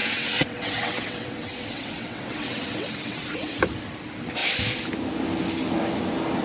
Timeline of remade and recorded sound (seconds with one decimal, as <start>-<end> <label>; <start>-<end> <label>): 0.0-3.6 remade; 3.6-6.4 recorded